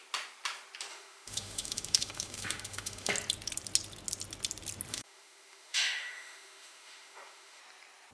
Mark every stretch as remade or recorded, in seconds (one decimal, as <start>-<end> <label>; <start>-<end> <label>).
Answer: 0.0-0.9 recorded; 0.9-3.1 remade; 3.1-4.9 recorded; 4.9-7.6 remade; 7.6-8.1 recorded